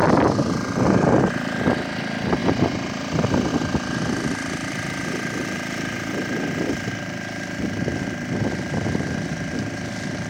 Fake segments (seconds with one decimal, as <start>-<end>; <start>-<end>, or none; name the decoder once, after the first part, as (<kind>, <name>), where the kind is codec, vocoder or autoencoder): none